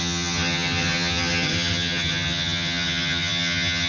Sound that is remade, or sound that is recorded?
remade